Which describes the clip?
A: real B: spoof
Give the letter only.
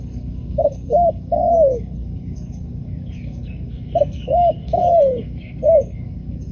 B